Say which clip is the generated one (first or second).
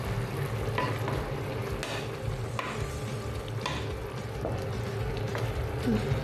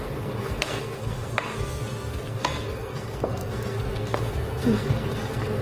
second